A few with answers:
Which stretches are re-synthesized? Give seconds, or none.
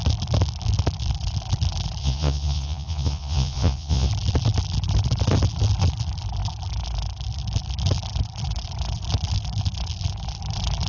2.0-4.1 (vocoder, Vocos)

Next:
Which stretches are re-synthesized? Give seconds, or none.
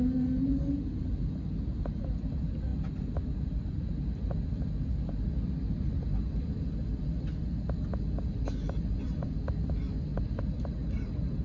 none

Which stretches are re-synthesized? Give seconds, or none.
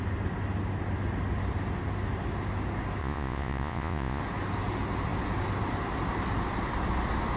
3.0-4.2 (vocoder, Vocos)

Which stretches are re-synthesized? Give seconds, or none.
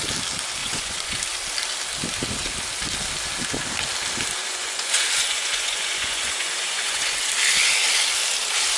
0.6-1.2 (vocoder, Vocos); 4.4-7.3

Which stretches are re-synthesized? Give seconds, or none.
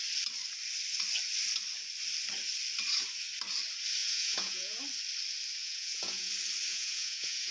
4.0-4.8 (vocoder, Vocos); 5.6-6.3; 6.7-7.5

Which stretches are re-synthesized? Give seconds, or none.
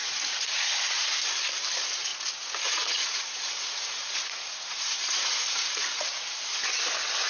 0.0-0.7 (vocoder, Vocos); 2.1-6.5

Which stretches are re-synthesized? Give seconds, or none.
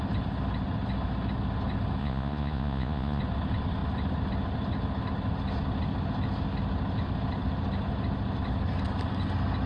2.0-3.2 (vocoder, Vocos)